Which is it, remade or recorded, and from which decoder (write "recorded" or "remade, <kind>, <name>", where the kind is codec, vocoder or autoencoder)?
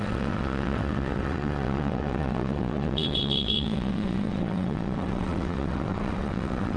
remade, vocoder, WaveNeXt